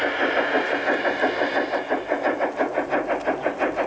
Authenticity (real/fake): real